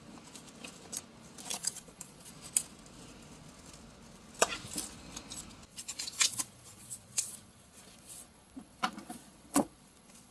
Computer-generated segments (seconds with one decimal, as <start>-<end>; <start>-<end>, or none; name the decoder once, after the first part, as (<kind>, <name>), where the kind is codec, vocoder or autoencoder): 1.5-2.3 (vocoder, Vocos); 5.7-10.3